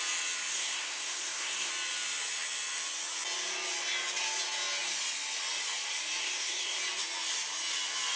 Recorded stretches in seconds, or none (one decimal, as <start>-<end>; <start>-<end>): 0.0-0.5; 1.7-6.2; 6.8-8.2